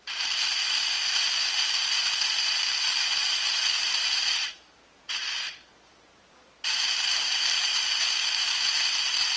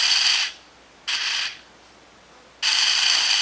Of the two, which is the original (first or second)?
second